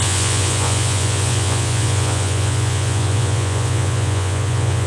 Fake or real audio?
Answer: fake